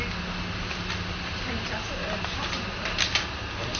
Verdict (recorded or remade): recorded